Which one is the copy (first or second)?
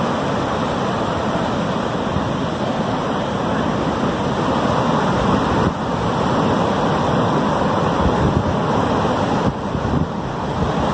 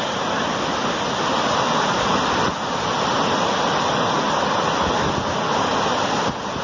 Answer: first